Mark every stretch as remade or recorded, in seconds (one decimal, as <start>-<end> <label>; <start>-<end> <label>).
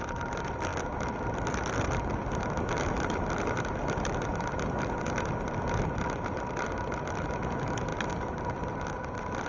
0.0-9.5 recorded